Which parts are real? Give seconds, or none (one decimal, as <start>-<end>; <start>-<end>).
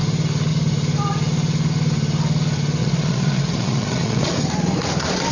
0.0-2.8; 4.3-5.3